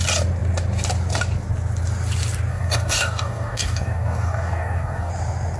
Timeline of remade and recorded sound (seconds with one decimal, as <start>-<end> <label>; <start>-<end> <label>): 0.0-2.5 recorded; 2.5-5.1 remade; 5.1-5.6 recorded